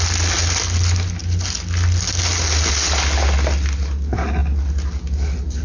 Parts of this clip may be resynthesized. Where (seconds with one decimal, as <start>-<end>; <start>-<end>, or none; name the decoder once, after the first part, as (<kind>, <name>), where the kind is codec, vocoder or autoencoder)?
none